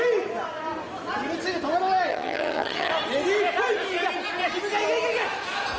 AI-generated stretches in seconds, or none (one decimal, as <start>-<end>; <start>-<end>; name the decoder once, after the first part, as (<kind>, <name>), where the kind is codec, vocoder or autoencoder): 2.1-2.9 (vocoder, HiFi-GAN)

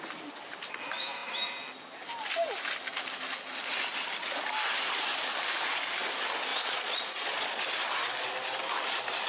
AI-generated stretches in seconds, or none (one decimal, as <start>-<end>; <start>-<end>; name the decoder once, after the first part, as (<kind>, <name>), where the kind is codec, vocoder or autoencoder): 6.5-7.6 (vocoder, Vocos)

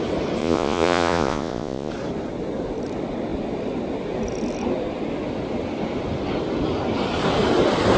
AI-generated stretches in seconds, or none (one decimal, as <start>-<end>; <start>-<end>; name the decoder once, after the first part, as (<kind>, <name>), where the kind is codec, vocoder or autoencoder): 0.4-1.9 (vocoder, Vocos)

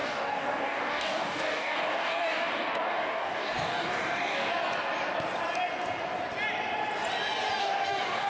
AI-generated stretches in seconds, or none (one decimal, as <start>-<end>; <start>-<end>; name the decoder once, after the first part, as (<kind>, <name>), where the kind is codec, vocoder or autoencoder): 0.0-4.5 (codec, DAC); 7.6-8.3

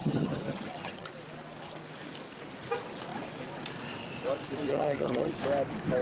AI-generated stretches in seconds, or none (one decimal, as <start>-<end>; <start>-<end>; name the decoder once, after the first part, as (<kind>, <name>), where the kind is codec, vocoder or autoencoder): 0.0-1.1 (vocoder, HiFi-GAN); 4.7-5.3

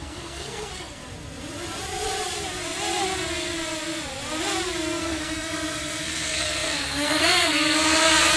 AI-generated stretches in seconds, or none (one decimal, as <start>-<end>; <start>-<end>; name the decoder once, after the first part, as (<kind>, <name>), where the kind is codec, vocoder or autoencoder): 0.0-1.0 (codec, SNAC); 5.0-8.4

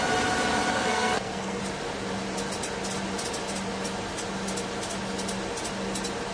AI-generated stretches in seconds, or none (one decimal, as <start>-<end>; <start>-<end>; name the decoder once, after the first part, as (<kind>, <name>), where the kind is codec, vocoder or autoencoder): 0.7-1.6 (codec, SNAC)